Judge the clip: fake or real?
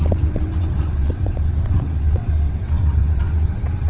fake